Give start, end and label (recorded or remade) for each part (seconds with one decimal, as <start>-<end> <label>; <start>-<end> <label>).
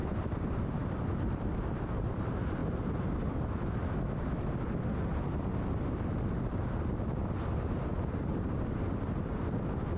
0.0-2.6 remade; 2.6-7.3 recorded; 7.3-10.0 remade